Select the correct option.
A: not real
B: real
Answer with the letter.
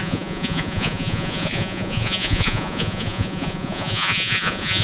A